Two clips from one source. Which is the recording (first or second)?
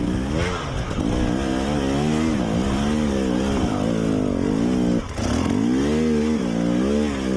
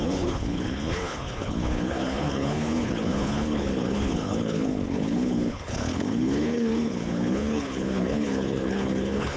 first